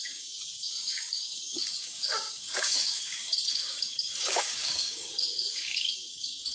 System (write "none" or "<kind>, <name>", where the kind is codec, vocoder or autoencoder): codec, DAC